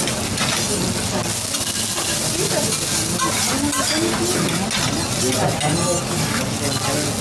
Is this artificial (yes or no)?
no